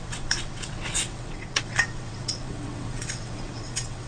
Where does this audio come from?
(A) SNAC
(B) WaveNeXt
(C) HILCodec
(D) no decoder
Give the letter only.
B